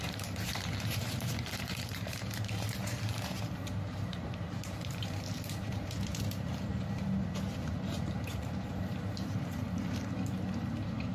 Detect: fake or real fake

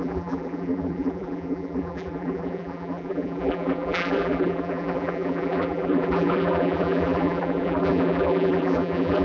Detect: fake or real fake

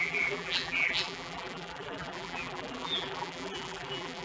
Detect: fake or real fake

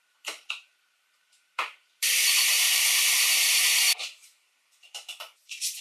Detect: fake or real fake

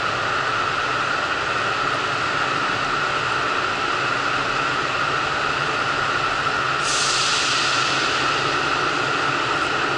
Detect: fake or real real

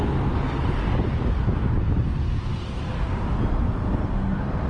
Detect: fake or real real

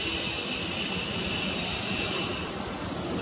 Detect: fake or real real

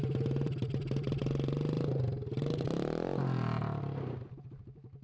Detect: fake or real real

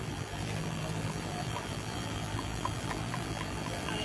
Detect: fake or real fake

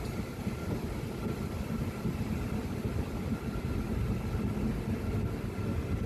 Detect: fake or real real